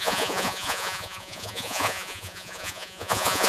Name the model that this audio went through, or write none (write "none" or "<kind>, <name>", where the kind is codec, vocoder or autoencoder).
vocoder, Vocos